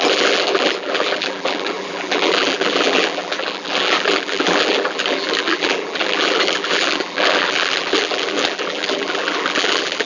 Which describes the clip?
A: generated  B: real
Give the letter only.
A